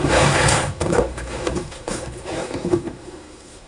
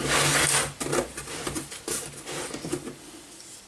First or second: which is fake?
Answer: first